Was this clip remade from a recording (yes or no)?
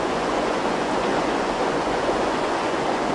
yes